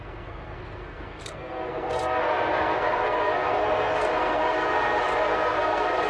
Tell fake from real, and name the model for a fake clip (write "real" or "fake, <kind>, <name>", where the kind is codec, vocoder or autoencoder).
fake, codec, SNAC